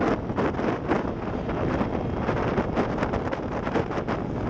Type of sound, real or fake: real